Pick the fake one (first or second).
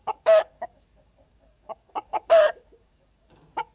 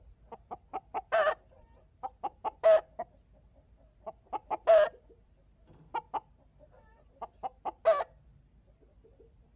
first